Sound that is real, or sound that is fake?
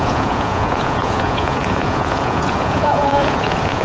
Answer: fake